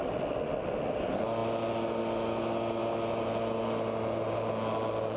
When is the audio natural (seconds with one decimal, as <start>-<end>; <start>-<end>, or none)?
0.0-5.2